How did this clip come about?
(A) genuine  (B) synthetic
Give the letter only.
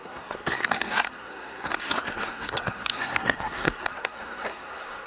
B